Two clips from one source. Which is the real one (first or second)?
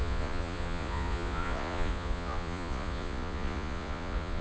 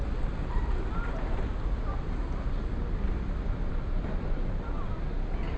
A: second